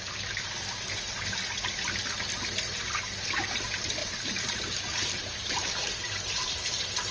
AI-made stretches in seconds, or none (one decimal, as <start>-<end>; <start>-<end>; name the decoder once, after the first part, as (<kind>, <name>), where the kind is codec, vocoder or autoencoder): 4.0-7.1 (vocoder, BigVGAN v2)